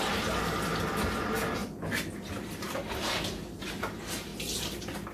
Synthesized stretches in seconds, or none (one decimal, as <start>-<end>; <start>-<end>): none